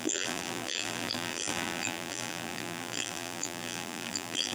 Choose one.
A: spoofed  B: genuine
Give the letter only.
A